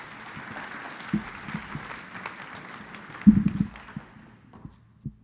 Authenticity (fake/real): real